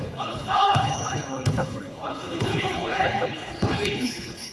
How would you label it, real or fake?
fake